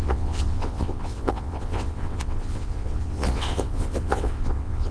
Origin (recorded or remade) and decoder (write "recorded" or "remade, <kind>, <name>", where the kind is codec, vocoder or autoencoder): remade, vocoder, WaveNeXt